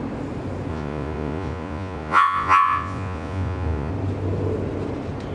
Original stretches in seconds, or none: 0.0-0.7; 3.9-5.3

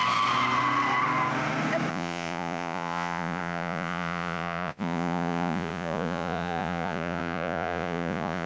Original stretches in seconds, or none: 0.0-1.9

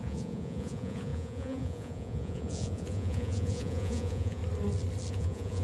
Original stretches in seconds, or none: 4.4-5.1

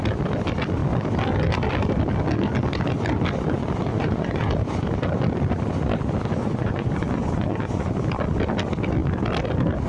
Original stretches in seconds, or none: 0.0-3.9; 4.5-6.4; 7.9-9.9

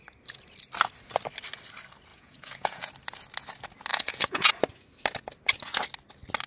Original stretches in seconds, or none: 0.0-2.1; 2.9-3.9; 4.5-6.5

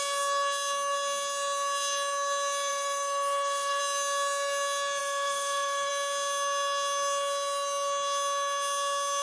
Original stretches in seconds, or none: 0.0-2.7; 3.8-5.0; 5.9-9.2

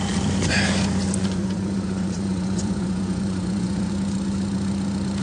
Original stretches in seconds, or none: 0.0-1.2; 3.9-5.2

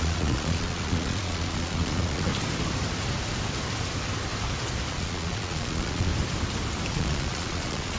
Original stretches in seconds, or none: 2.3-4.9; 6.1-6.9